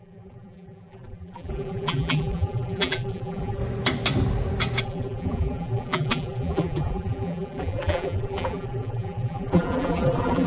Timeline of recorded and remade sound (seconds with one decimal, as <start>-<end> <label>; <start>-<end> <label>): 0.0-3.6 remade; 3.6-4.8 recorded; 4.8-10.5 remade